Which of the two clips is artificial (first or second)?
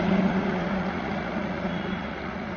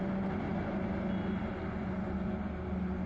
first